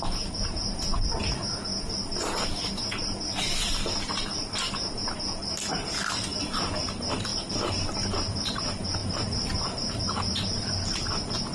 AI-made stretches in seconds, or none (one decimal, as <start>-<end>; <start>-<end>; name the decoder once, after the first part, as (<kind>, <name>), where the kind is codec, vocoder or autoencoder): 5.4-6.4 (vocoder, BigVGAN v2); 9.0-10.7